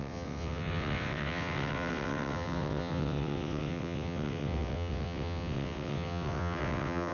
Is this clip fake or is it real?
fake